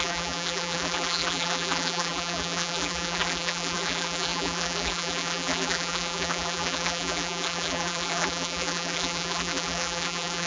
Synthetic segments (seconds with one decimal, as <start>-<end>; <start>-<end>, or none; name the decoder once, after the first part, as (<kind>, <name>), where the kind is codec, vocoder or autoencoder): 0.0-10.5 (vocoder, BigVGAN v2)